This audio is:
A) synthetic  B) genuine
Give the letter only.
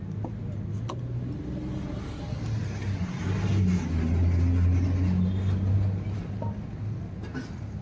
B